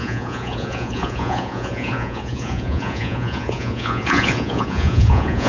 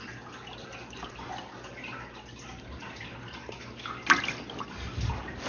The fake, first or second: first